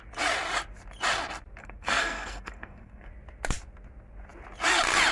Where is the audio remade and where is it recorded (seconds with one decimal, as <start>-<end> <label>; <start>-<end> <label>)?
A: 0.0-1.6 recorded; 1.6-3.1 remade; 3.1-5.1 recorded